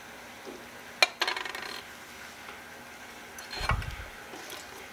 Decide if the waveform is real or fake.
real